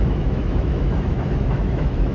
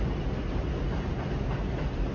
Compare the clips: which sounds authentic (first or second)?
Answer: second